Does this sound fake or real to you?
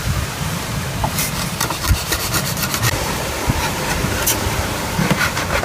fake